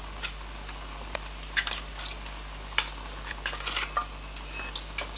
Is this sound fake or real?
real